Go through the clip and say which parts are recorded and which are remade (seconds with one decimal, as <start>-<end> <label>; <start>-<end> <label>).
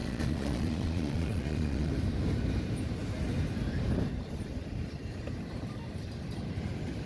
0.0-1.9 remade; 1.9-7.1 recorded